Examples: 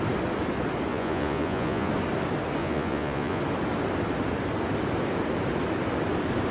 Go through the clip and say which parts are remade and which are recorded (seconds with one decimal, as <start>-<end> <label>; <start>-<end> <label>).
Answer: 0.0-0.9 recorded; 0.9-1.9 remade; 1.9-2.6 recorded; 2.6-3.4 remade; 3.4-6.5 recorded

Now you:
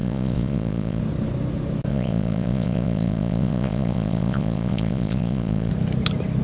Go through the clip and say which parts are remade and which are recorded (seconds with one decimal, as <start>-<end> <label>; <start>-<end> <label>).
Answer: 0.0-1.0 remade; 1.0-1.9 recorded; 1.9-5.7 remade; 5.7-6.4 recorded

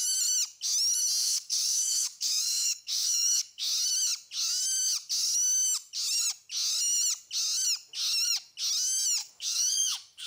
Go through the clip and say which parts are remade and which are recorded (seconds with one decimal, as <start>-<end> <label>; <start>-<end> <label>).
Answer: 0.0-1.2 recorded; 1.2-3.7 remade; 3.7-9.2 recorded; 9.2-10.3 remade